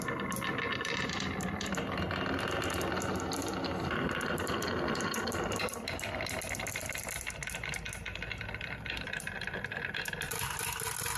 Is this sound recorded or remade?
recorded